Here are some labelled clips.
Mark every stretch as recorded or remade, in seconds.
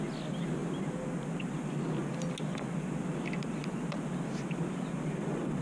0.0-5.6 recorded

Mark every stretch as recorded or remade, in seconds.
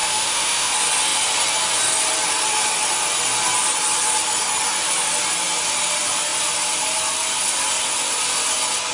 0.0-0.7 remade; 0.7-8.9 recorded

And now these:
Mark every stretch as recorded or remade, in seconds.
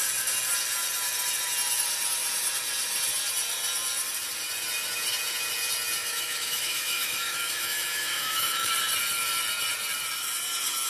0.0-6.0 recorded; 6.0-8.7 remade; 8.7-10.9 recorded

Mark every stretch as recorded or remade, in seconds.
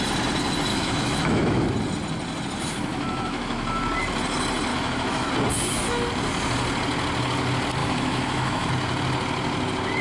0.0-0.7 recorded; 0.7-1.7 remade; 1.7-2.9 recorded; 2.9-3.8 remade; 3.8-4.7 recorded; 4.7-5.3 remade; 5.3-7.8 recorded; 7.8-8.7 remade; 8.7-10.0 recorded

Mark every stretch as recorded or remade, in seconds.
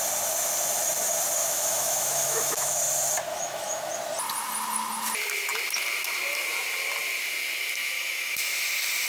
0.0-1.4 recorded; 1.4-2.8 remade; 2.8-3.3 recorded; 3.3-3.9 remade; 3.9-7.8 recorded; 7.8-8.6 remade; 8.6-9.1 recorded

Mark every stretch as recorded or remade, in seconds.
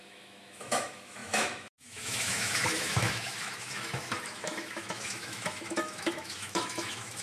0.0-7.2 remade